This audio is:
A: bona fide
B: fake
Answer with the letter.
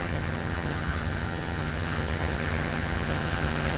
B